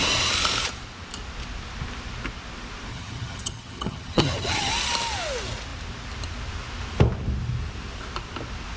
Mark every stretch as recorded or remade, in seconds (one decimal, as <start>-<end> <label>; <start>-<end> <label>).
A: 0.0-2.9 recorded; 2.9-4.7 remade; 4.7-8.8 recorded